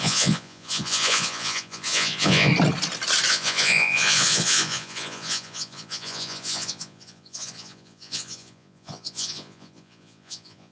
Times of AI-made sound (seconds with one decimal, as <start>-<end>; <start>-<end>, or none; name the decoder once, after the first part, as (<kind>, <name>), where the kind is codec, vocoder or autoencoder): 0.0-2.5 (vocoder, Vocos); 3.3-10.7